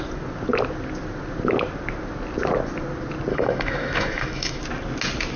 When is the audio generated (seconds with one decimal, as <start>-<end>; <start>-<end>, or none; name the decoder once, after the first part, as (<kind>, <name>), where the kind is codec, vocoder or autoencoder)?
3.3-4.6 (autoencoder, DAC-VAE)